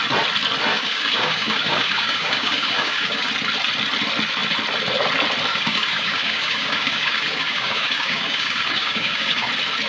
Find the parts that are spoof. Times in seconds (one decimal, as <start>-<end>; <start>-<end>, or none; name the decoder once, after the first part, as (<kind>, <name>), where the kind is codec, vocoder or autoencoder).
0.7-3.3 (codec, DAC); 5.5-9.5